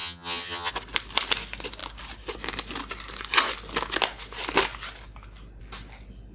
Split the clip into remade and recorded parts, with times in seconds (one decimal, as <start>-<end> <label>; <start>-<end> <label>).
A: 0.0-0.7 remade; 0.7-6.3 recorded